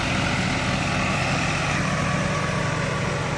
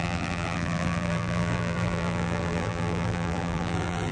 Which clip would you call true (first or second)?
first